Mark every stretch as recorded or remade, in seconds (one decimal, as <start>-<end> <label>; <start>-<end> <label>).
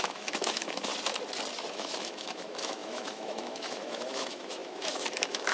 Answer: 0.0-0.9 remade; 0.9-1.7 recorded; 1.7-5.5 remade